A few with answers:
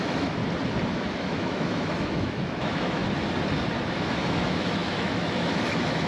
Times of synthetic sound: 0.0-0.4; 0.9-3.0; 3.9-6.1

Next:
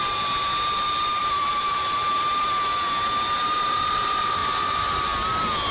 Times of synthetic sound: 1.2-2.6

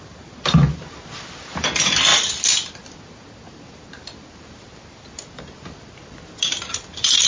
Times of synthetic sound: none

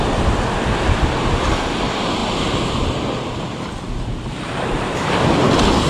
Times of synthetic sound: none

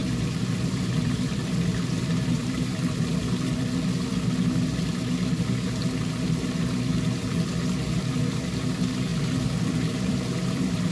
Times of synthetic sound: 0.0-3.2; 9.1-10.9